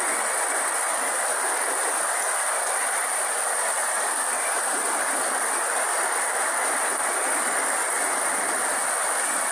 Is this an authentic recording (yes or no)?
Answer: yes